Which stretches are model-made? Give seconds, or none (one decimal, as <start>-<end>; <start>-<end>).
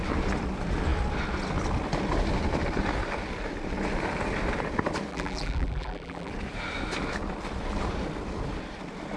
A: 5.1-6.3